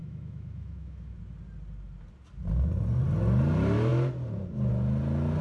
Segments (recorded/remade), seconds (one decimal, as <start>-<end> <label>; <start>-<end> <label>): 0.0-1.2 remade; 1.2-5.4 recorded

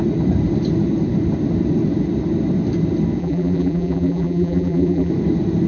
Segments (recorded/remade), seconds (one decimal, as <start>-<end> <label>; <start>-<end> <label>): 0.0-3.2 recorded; 3.2-5.1 remade; 5.1-5.7 recorded

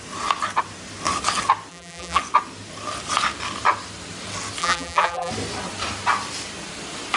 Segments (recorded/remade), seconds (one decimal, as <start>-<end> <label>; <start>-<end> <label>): 0.0-1.7 recorded; 1.7-2.2 remade; 2.2-4.6 recorded; 4.6-5.3 remade; 5.3-7.2 recorded

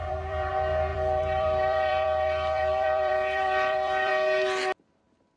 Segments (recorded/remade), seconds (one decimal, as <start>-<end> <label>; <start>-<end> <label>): 0.0-0.5 remade; 0.5-0.9 recorded; 0.9-4.1 remade; 4.1-5.4 recorded

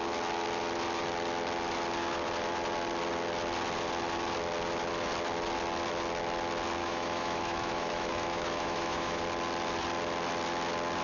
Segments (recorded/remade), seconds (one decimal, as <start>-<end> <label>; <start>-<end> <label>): 0.0-6.8 recorded; 6.8-9.2 remade; 9.2-11.0 recorded

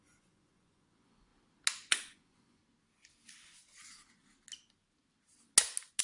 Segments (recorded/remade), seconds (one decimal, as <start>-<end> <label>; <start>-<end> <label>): 0.0-1.3 remade; 1.3-1.9 recorded; 1.9-2.6 remade; 2.6-6.0 recorded